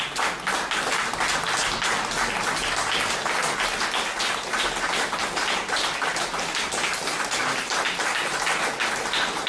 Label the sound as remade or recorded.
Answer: recorded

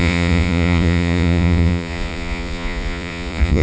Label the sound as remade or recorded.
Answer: remade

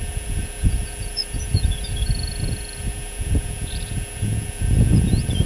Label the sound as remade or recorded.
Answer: remade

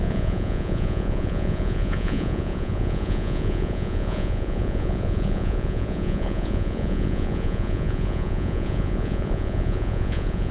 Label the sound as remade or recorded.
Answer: remade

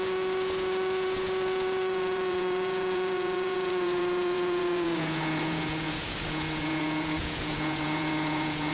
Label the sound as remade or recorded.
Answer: remade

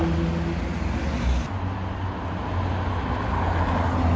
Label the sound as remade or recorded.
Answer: recorded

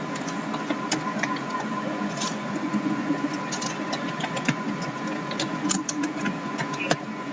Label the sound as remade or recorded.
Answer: remade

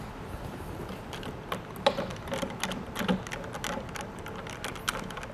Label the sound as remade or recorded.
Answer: recorded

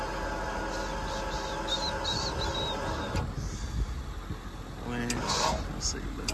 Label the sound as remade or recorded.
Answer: recorded